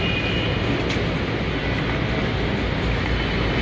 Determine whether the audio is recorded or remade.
recorded